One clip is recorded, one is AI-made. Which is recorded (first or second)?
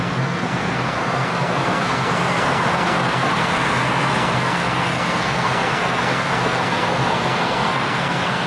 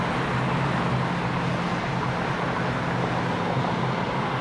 second